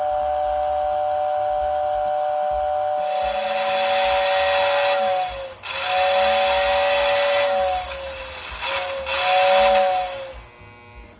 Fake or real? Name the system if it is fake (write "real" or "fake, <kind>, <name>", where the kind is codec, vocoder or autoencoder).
real